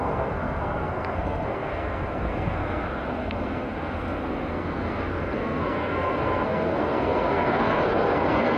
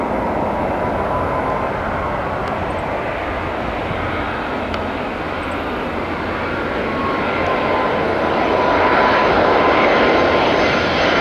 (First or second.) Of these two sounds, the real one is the second